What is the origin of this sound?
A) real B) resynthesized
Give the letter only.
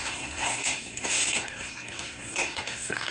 B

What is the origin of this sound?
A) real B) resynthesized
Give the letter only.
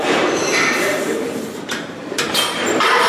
B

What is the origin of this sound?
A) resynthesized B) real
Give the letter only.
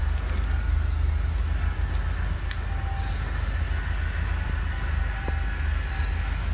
B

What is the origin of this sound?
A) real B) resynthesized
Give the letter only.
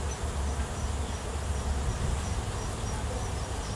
A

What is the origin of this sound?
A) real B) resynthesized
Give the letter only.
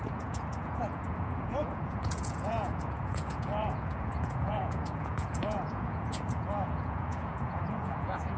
B